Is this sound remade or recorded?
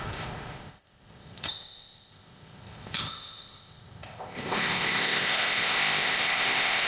remade